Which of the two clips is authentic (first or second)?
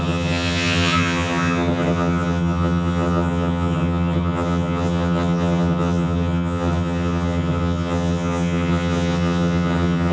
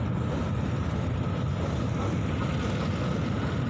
second